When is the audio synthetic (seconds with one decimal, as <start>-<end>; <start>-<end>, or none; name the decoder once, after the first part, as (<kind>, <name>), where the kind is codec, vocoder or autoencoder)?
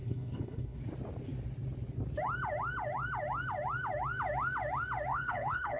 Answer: 0.0-0.8 (codec, HILCodec); 5.1-5.8